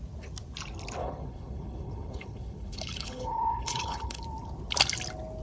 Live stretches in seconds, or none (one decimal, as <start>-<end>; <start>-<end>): 0.0-1.0; 4.2-5.4